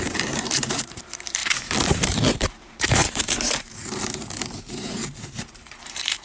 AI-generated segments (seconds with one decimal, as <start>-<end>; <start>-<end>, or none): 0.0-6.2